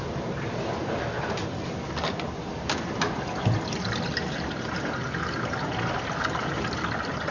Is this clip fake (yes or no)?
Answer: no